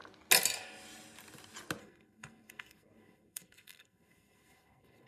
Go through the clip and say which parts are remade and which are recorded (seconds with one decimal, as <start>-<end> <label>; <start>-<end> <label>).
0.0-1.8 recorded; 1.8-5.1 remade